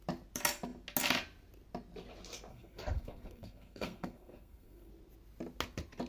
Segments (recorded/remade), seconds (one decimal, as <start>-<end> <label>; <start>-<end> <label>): 0.0-2.5 recorded; 2.5-4.9 remade; 4.9-6.1 recorded